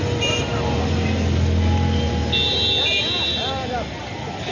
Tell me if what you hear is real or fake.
real